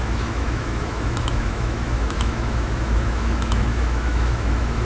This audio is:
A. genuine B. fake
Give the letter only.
B